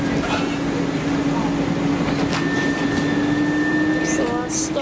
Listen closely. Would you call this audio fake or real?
real